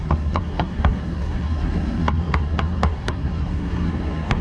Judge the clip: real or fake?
fake